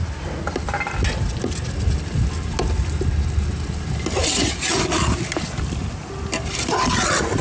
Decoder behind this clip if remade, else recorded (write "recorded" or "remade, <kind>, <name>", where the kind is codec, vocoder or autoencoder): recorded